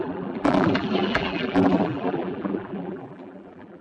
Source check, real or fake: fake